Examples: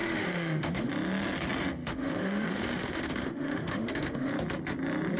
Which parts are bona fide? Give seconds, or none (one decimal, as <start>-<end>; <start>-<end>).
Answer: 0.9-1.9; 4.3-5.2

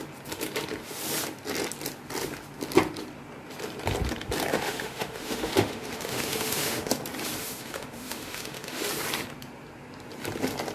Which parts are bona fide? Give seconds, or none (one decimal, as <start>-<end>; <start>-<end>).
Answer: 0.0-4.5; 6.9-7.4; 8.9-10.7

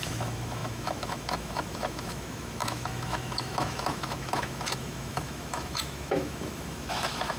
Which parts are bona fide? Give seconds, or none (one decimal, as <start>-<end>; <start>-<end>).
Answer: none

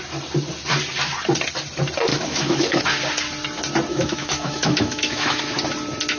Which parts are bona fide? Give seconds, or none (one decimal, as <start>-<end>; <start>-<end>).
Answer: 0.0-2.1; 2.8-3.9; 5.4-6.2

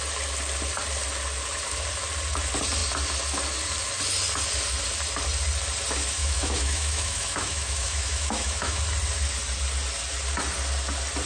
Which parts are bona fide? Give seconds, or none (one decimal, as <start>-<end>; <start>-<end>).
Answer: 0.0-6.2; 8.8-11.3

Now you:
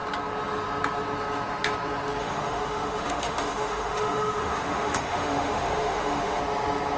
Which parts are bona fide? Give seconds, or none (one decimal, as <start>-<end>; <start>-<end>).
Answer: 0.0-2.2; 6.4-7.0